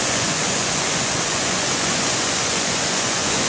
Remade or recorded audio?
remade